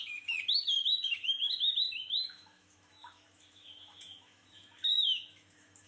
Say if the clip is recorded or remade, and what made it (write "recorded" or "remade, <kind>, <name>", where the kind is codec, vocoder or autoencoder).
remade, autoencoder, DAC-VAE